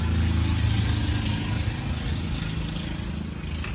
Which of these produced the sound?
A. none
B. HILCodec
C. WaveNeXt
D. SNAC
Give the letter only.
A